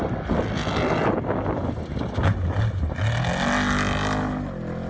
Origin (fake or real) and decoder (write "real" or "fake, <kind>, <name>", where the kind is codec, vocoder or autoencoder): real